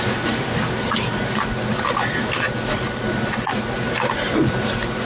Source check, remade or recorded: recorded